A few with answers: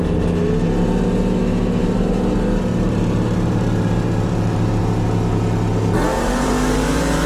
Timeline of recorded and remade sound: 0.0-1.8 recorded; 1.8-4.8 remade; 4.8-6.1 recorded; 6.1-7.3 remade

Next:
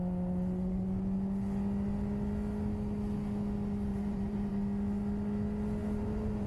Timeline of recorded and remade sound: 0.0-3.9 recorded; 3.9-4.5 remade; 4.5-5.8 recorded; 5.8-6.5 remade

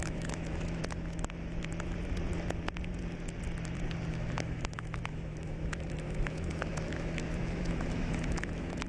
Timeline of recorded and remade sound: 0.0-0.8 remade; 0.8-4.1 recorded; 4.1-8.9 remade

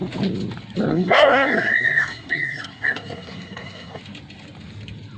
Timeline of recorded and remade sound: 0.0-0.9 recorded; 0.9-4.0 remade; 4.0-5.2 recorded

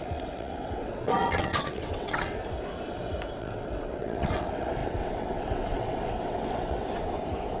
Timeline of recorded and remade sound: 0.0-2.4 remade; 2.4-3.4 recorded; 3.4-6.8 remade; 6.8-7.6 recorded